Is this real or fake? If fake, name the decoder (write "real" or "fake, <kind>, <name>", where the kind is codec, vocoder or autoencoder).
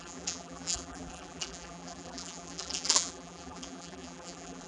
fake, vocoder, BigVGAN v2